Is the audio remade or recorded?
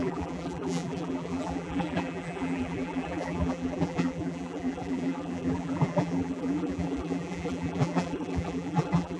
remade